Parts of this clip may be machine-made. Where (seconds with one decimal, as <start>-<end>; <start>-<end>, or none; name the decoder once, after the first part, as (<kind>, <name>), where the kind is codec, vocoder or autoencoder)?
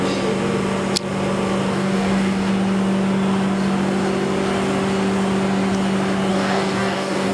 1.6-2.5 (codec, DAC); 6.3-7.3